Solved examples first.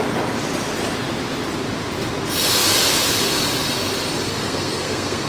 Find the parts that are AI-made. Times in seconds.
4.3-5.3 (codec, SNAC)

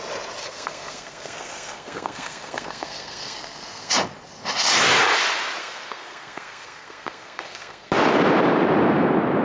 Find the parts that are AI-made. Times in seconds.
0.4-3.9 (codec, SNAC); 5.6-7.9

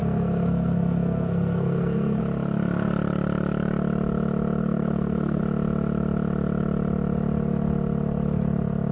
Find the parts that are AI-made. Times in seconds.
0.0-2.2 (codec, SNAC); 4.6-5.4

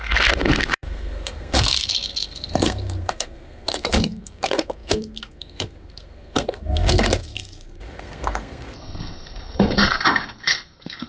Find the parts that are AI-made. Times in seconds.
0.0-11.1 (codec, SNAC)

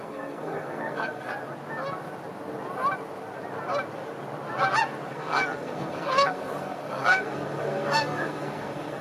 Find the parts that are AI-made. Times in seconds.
0.0-1.3 (codec, SNAC); 5.1-9.0

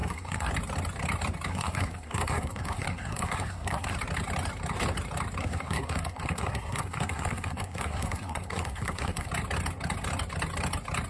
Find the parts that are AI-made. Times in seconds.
0.0-0.5 (codec, SNAC); 1.5-3.9; 5.4-9.3

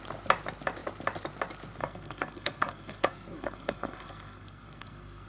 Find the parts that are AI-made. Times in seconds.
1.8-5.3 (codec, SNAC)

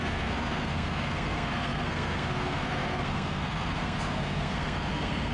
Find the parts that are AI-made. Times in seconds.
0.0-5.3 (codec, SNAC)